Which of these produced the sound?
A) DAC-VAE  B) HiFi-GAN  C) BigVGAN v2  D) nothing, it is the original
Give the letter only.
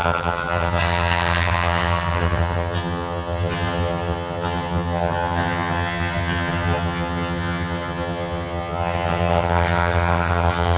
B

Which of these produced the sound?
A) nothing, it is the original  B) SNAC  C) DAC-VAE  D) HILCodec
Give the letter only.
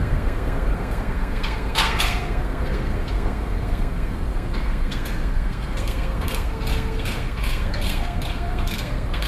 B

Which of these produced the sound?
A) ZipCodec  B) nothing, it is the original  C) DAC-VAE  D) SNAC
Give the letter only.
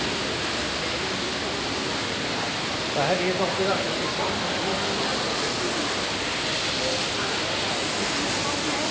B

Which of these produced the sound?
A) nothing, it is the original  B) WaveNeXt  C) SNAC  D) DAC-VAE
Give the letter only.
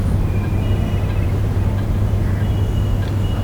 A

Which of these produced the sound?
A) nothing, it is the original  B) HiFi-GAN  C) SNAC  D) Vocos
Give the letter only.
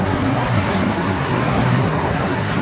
C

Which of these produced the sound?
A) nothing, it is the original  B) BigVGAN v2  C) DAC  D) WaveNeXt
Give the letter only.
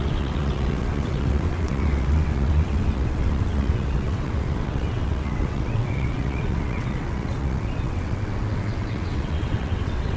D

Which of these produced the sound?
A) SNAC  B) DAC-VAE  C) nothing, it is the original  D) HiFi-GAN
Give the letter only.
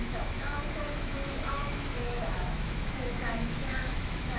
B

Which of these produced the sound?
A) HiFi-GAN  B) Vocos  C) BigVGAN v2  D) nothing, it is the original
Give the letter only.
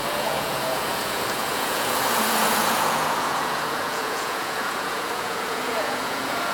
B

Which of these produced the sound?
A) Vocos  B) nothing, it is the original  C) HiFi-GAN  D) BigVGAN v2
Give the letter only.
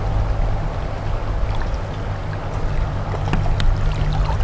B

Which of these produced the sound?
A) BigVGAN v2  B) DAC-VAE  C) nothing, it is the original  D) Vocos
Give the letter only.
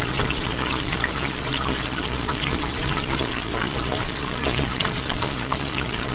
D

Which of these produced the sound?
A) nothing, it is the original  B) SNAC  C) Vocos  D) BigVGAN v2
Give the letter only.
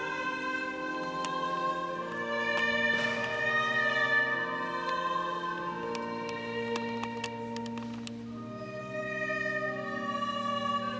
A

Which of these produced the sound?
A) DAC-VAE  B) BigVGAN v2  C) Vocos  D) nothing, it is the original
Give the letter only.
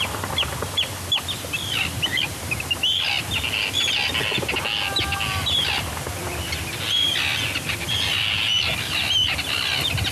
D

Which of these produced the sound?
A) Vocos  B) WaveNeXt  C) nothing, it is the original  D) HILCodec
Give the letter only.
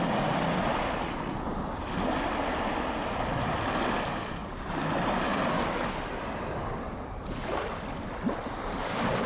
C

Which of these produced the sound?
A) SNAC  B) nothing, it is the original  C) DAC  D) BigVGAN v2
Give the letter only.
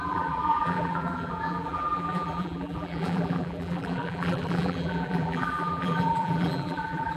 D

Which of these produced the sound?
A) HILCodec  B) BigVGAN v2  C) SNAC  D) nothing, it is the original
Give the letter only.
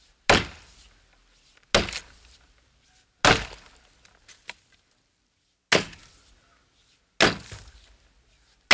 D